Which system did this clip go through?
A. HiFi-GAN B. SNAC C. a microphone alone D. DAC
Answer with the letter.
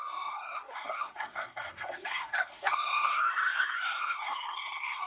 B